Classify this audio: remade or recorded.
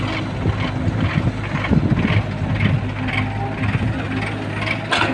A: recorded